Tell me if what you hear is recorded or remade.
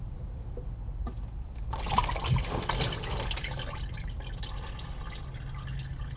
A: recorded